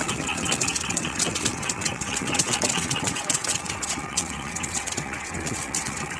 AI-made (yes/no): yes